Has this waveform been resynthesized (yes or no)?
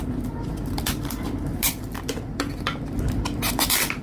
yes